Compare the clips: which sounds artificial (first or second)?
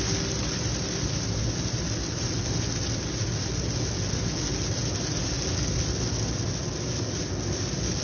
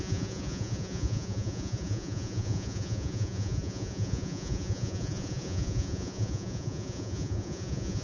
second